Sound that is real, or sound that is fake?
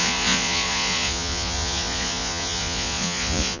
fake